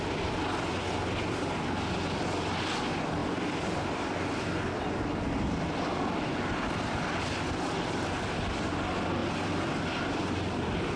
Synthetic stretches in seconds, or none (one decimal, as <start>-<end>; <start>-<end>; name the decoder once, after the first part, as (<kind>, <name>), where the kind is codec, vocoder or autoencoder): 3.2-5.0 (vocoder, BigVGAN v2); 9.2-11.0